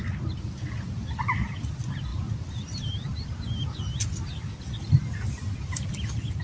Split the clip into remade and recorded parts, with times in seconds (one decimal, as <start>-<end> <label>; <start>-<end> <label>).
0.0-6.4 recorded